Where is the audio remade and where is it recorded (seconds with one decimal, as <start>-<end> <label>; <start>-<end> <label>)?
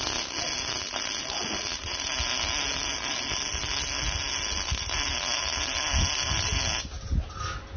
0.0-7.8 recorded